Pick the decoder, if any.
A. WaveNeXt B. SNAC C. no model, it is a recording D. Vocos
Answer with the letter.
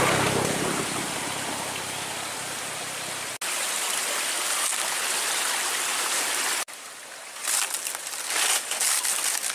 C